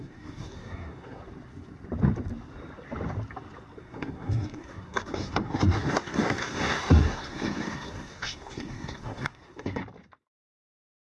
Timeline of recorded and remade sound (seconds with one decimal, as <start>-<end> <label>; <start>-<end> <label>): 0.0-1.2 remade; 1.2-3.8 recorded; 3.8-9.8 remade; 9.8-10.5 recorded; 10.5-11.2 remade